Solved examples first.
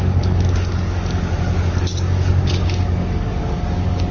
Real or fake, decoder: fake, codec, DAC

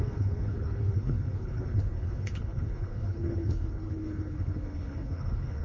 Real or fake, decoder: fake, codec, HILCodec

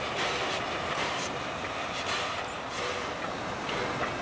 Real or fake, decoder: real